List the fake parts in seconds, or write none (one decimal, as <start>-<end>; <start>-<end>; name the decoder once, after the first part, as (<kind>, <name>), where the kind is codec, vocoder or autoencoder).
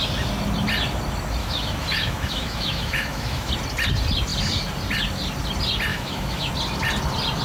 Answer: 1.4-3.5 (autoencoder, DAC-VAE); 5.9-6.5